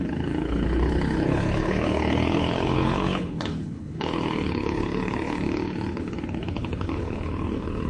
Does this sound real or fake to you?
fake